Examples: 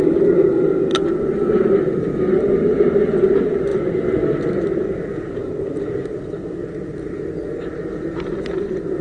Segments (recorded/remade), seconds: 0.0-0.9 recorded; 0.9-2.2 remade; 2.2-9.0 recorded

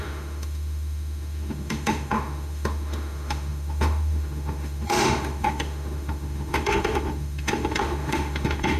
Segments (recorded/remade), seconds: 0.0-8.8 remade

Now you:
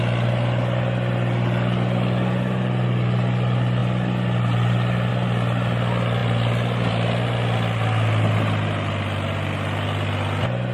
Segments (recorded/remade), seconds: 0.0-10.7 recorded

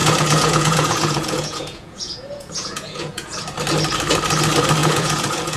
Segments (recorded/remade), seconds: 0.0-3.4 remade; 3.4-4.8 recorded; 4.8-5.6 remade